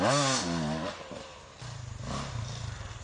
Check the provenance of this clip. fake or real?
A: real